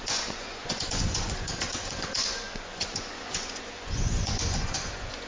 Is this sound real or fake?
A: fake